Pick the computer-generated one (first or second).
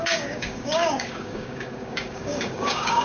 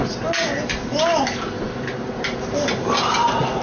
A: first